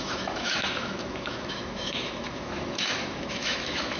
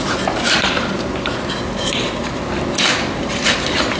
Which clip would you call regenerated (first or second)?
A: first